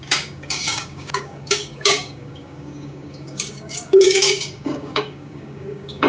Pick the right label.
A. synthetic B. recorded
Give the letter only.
A